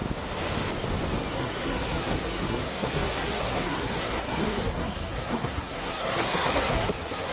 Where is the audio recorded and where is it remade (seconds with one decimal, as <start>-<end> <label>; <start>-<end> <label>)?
0.0-1.3 recorded; 1.3-7.3 remade